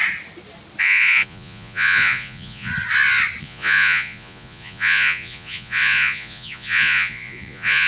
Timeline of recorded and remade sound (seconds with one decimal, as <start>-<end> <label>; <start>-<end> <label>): 0.0-0.8 recorded; 0.8-2.7 remade; 2.7-3.4 recorded; 3.4-7.9 remade